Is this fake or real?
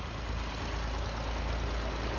real